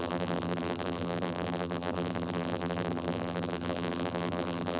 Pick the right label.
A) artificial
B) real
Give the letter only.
A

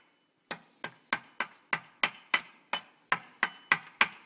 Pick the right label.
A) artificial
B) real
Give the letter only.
B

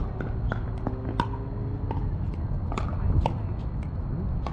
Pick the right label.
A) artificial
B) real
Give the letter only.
B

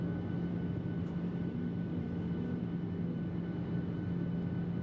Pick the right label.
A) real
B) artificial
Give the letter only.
A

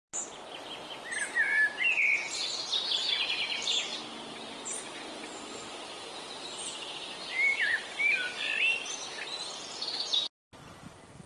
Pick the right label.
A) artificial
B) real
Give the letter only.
B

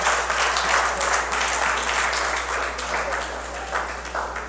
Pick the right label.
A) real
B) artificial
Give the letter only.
A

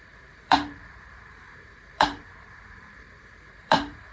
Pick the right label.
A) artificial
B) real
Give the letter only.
A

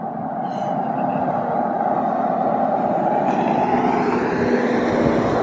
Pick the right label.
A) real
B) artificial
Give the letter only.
A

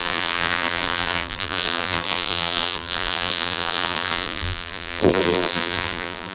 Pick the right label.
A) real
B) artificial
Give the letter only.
B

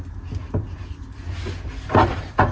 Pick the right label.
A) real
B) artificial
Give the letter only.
A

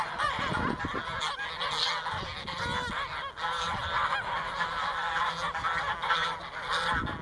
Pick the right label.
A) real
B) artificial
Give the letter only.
A